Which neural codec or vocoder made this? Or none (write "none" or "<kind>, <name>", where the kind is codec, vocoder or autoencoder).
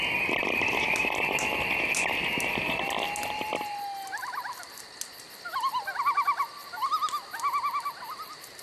none